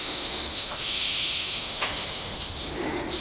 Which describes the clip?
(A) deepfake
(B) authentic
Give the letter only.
A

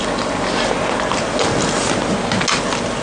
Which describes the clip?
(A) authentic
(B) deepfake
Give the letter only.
A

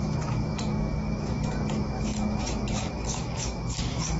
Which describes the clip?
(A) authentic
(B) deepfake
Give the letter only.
B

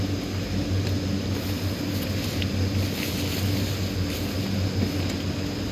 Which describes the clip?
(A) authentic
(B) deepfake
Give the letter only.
A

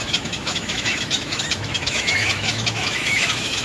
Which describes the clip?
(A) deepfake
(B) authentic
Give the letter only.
A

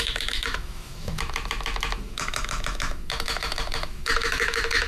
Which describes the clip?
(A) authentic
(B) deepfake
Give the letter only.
B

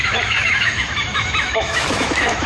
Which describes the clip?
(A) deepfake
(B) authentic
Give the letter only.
A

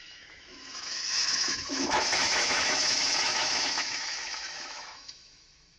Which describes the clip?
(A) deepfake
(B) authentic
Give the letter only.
A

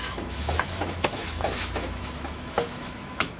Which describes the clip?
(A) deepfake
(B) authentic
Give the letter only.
A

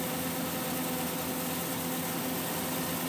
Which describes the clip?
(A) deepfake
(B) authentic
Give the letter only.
B